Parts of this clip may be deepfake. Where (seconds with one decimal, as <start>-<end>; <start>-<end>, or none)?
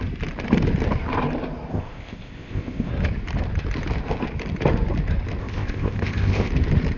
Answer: 1.7-2.9; 5.4-6.5